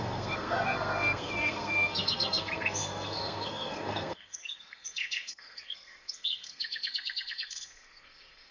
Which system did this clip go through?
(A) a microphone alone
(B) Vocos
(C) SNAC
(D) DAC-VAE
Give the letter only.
C